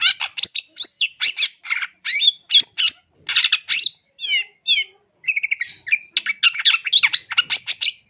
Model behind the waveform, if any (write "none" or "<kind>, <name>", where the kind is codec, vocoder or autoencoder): none